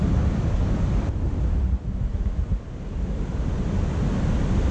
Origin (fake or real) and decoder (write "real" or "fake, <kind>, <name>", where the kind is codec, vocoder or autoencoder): real